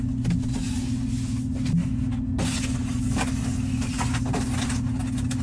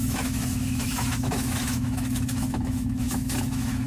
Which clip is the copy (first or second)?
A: second